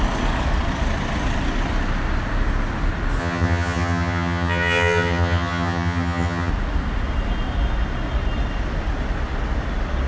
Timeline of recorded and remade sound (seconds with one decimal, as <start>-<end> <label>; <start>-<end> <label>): 0.0-3.2 recorded; 3.2-6.5 remade; 6.5-10.1 recorded